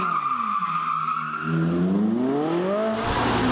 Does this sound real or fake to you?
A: real